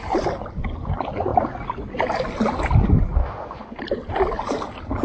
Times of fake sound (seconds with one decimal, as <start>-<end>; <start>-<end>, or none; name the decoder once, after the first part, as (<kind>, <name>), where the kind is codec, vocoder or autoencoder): 3.2-3.8 (autoencoder, DAC-VAE)